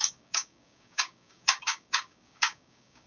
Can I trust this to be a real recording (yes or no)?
no